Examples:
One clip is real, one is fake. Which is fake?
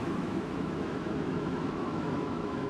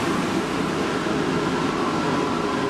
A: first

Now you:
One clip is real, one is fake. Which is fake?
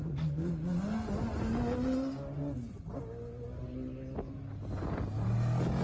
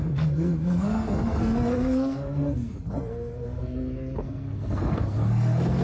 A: second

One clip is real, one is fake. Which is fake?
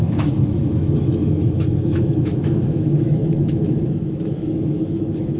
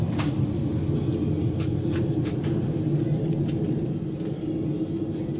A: first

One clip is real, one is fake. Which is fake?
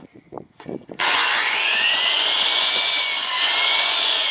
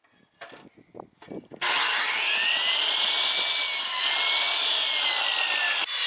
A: first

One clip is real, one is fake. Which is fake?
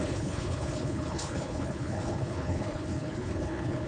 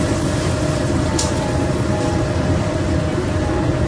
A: first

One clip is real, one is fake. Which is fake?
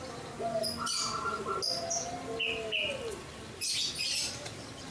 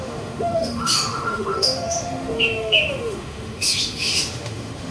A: second